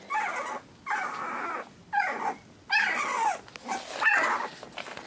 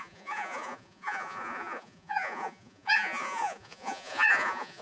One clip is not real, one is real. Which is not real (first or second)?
second